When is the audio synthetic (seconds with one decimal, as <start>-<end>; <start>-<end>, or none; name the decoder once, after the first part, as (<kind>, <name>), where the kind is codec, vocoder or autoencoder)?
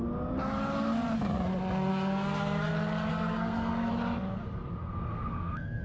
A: 1.9-2.7 (codec, SNAC); 3.1-3.9; 4.8-5.8